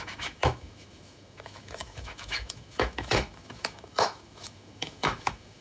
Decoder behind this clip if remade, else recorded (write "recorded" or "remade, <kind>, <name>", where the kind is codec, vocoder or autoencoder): remade, autoencoder, DAC-VAE